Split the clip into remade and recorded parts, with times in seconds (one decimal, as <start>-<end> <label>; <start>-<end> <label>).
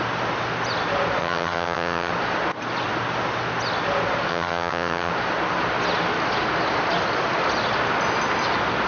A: 0.0-1.2 recorded; 1.2-2.1 remade; 2.1-4.3 recorded; 4.3-5.1 remade; 5.1-8.9 recorded